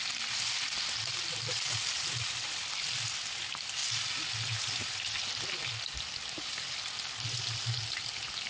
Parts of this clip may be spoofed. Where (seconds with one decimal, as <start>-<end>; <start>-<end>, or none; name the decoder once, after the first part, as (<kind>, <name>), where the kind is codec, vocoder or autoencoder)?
none